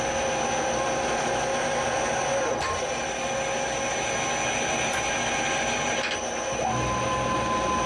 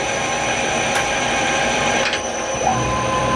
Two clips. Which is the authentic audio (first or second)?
first